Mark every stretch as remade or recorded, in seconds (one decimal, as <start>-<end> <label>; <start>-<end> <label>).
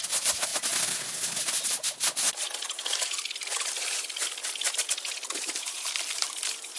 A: 0.0-0.5 remade; 0.5-3.7 recorded; 3.7-4.6 remade; 4.6-5.4 recorded; 5.4-6.8 remade